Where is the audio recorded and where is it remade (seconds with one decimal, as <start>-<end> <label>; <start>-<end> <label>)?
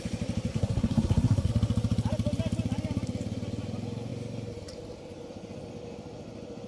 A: 0.0-0.5 recorded; 0.5-1.5 remade; 1.5-6.7 recorded